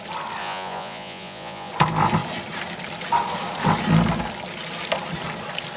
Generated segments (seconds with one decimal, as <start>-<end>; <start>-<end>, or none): 0.4-1.7